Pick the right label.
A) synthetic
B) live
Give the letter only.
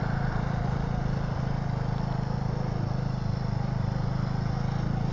B